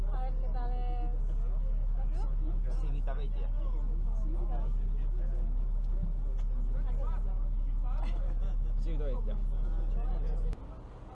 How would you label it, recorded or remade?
recorded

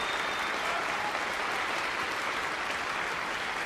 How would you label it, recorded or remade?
recorded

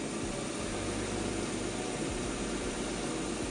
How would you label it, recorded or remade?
recorded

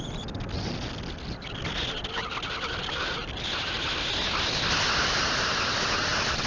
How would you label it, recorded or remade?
recorded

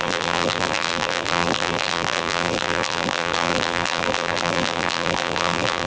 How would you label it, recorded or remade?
remade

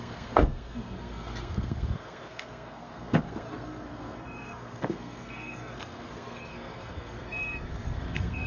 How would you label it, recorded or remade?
remade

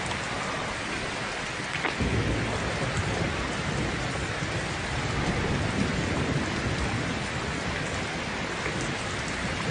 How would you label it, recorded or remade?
recorded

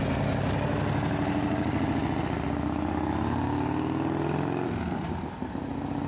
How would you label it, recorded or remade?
recorded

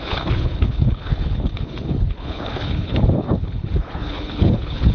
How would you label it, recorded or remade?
remade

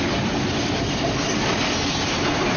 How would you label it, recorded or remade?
recorded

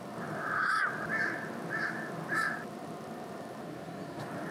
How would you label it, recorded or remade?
remade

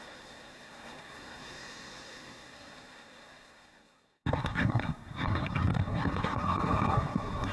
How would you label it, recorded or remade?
remade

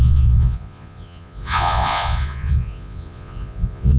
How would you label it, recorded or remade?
remade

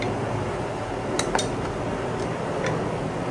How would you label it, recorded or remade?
recorded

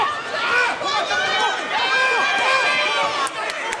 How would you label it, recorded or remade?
recorded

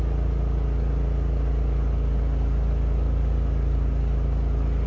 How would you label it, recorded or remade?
recorded